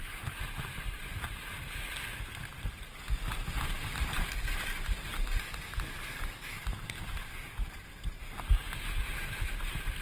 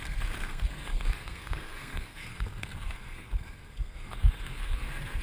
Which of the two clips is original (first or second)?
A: first